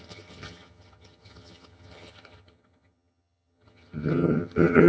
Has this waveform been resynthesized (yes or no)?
yes